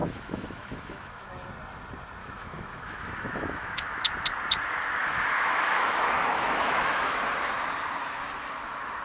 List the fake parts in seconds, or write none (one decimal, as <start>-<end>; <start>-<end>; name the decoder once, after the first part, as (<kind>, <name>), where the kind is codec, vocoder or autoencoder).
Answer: 0.0-1.3 (autoencoder, DAC-VAE); 2.2-4.1; 5.0-7.2